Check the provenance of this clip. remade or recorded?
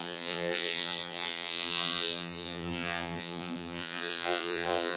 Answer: remade